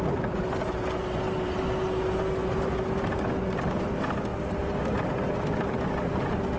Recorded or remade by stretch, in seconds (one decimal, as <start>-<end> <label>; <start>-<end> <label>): 0.0-6.6 recorded